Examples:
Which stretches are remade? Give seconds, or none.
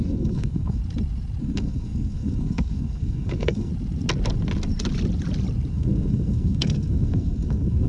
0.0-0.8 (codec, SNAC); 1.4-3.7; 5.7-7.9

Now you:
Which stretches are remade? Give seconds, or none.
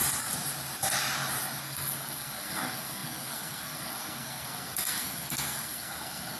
1.6-6.4 (codec, SNAC)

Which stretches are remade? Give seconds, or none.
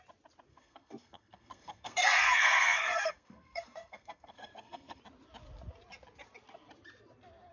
0.5-5.0 (codec, SNAC)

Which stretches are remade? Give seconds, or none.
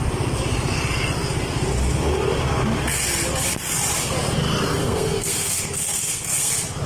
4.8-6.5 (codec, SNAC)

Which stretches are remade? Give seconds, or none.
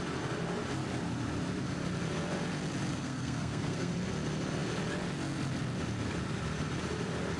2.9-3.9 (codec, SNAC)